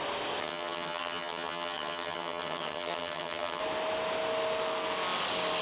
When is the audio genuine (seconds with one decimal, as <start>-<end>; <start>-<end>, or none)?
0.0-0.4; 3.6-5.6